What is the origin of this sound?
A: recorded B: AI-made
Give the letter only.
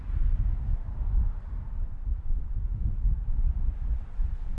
B